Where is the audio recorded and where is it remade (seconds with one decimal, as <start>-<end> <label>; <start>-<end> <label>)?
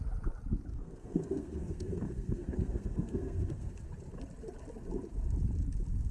0.0-0.7 recorded; 0.7-3.7 remade; 3.7-6.1 recorded